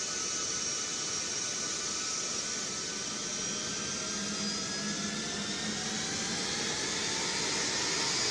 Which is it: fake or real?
real